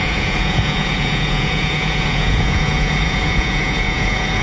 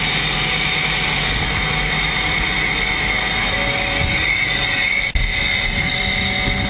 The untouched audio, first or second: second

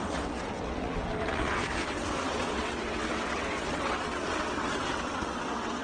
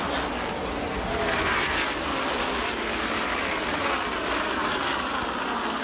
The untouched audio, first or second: second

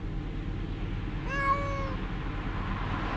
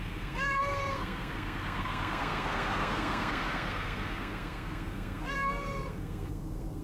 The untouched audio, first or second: first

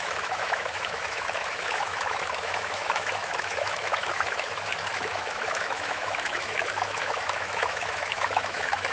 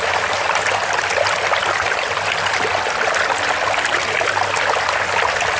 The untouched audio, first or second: second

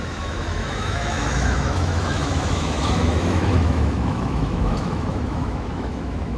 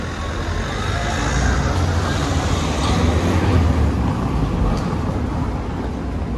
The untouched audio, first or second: second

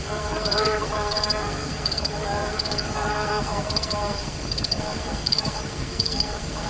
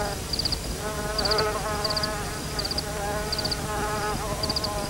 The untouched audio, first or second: second